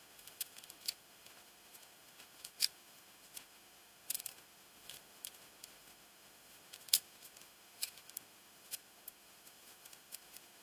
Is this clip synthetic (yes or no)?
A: yes